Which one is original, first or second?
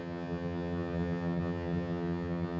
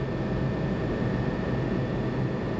second